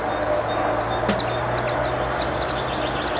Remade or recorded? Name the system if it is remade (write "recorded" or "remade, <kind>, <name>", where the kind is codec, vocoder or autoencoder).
recorded